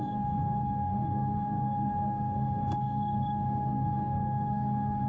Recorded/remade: remade